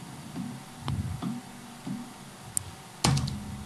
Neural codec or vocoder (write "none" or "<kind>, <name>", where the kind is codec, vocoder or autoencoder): none